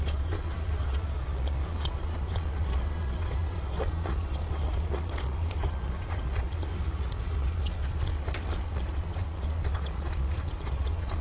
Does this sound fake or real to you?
fake